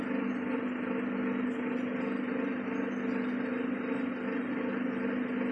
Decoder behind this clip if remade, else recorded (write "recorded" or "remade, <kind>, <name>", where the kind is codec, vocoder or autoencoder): recorded